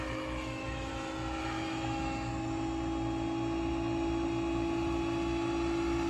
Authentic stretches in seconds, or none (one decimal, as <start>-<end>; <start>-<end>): 0.9-1.4; 2.3-6.1